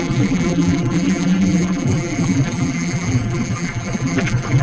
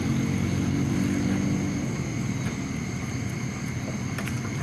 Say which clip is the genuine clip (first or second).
second